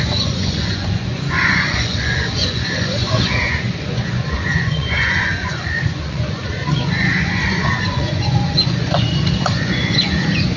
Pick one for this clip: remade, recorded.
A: remade